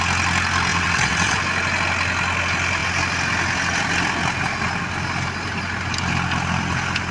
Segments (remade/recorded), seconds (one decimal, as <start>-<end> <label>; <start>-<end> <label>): 0.0-0.7 recorded; 0.7-1.4 remade; 1.4-7.1 recorded